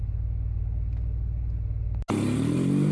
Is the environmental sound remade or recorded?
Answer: recorded